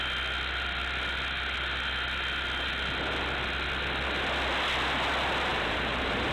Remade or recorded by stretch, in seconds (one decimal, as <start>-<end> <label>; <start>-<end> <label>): 0.0-5.5 recorded; 5.5-6.3 remade